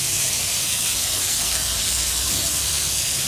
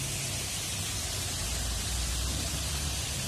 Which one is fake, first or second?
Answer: first